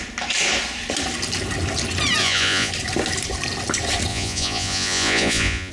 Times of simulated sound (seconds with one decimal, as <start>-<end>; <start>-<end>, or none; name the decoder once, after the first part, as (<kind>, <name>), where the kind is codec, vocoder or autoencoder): 2.2-2.7 (vocoder, Vocos); 4.1-5.7